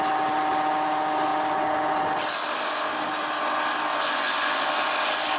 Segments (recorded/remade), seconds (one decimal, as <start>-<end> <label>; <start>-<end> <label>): 0.0-3.9 recorded; 3.9-4.9 remade; 4.9-5.4 recorded